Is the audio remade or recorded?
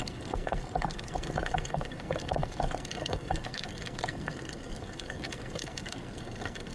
remade